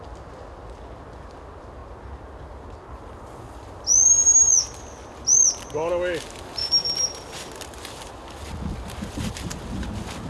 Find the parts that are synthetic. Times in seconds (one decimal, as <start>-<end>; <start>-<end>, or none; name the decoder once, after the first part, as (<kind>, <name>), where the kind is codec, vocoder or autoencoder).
none